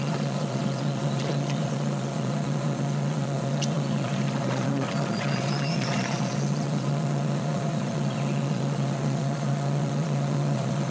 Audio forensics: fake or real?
fake